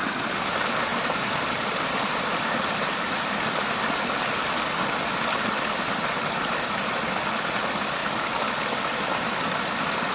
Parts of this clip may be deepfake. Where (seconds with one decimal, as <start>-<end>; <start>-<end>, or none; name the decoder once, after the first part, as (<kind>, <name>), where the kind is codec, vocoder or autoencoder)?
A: 0.9-3.1 (vocoder, BigVGAN v2)